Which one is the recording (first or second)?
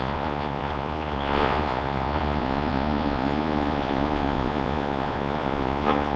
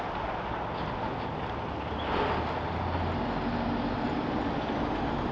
second